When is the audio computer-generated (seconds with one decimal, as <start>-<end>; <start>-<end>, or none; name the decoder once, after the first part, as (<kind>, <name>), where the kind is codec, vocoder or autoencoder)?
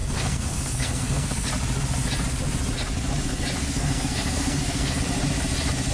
0.0-1.5 (codec, SNAC); 3.6-5.0